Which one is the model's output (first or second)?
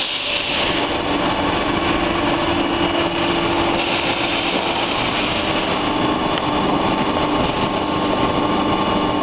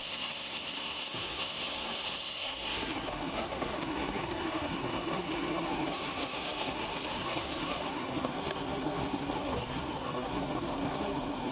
second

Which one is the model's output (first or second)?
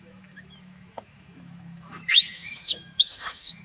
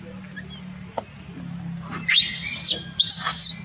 first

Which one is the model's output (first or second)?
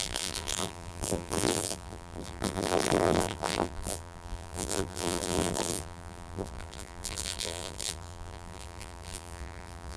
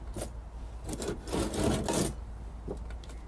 first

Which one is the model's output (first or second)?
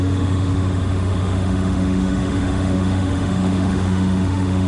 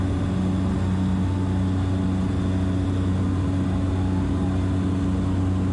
first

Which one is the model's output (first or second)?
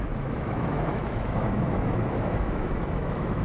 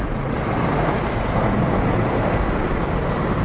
first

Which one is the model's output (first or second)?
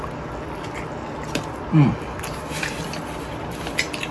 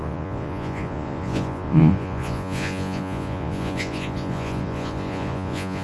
second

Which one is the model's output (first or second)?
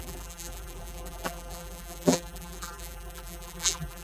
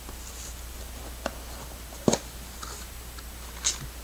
first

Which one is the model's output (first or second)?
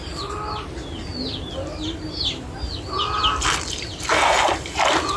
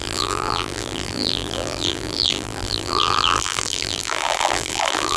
second